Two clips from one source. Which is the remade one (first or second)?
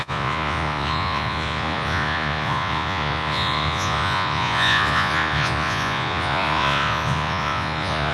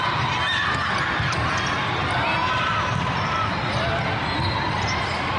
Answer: first